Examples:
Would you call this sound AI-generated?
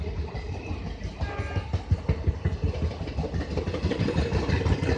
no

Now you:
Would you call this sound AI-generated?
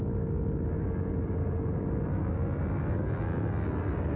no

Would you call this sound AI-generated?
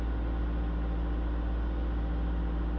no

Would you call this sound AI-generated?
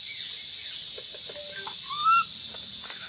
no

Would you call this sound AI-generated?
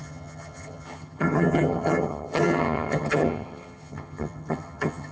yes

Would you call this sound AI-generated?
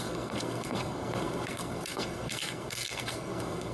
yes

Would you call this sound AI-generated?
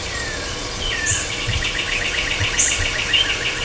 yes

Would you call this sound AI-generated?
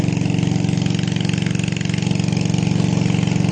no